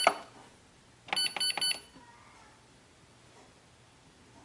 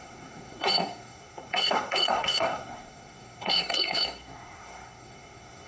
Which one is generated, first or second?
second